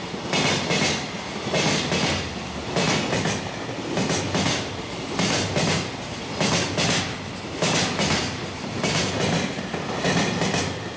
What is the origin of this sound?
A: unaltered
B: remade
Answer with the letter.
A